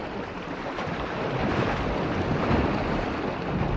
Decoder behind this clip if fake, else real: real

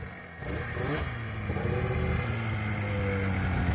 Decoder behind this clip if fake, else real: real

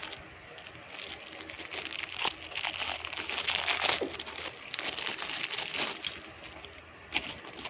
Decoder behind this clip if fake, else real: real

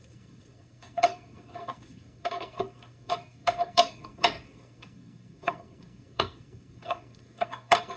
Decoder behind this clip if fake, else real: fake, codec, SNAC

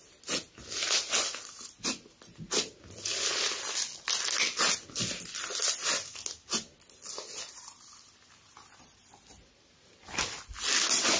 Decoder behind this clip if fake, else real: real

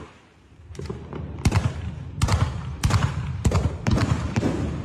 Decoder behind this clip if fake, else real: fake, vocoder, BigVGAN v2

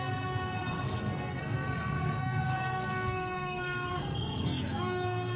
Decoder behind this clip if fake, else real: fake, codec, SNAC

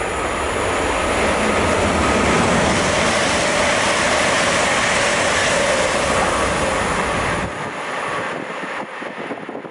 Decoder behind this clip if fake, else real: real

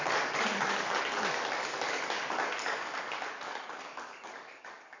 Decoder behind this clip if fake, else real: fake, codec, DAC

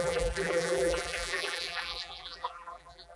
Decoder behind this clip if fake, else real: fake, vocoder, BigVGAN v2